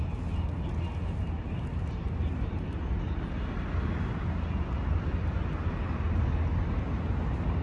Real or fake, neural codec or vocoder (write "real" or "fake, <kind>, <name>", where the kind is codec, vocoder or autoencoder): real